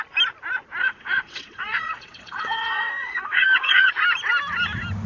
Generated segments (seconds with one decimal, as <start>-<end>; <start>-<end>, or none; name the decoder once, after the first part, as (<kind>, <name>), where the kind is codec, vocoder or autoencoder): 0.8-3.9 (vocoder, WaveNeXt)